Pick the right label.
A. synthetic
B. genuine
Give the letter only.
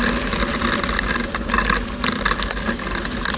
B